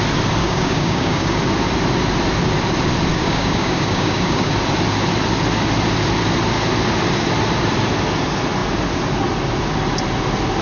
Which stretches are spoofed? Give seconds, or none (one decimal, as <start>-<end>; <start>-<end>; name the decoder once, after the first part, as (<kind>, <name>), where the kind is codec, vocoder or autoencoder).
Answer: 0.4-1.4 (codec, DAC); 3.1-4.5